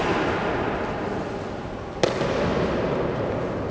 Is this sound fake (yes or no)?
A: no